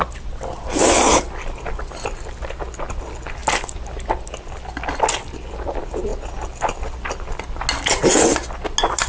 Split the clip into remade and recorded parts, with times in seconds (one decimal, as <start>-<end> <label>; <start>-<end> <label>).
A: 0.0-9.1 recorded